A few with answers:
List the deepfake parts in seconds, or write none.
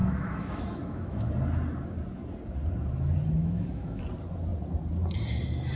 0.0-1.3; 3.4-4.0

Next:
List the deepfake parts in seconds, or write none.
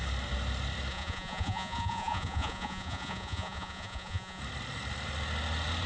0.9-4.4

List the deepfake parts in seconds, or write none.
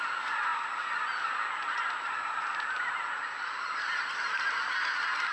none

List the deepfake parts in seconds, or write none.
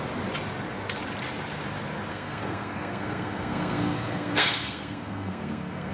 2.1-5.9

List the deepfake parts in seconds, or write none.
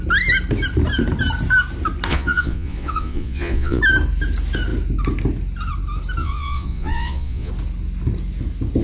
2.1-3.8; 6.2-7.5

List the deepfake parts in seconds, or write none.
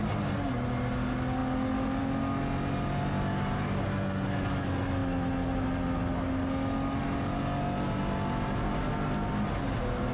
none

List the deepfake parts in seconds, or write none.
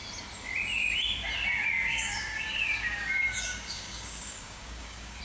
1.9-5.2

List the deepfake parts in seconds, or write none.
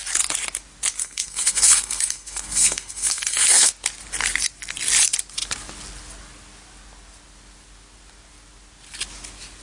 1.0-3.7